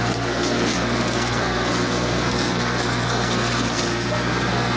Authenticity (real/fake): fake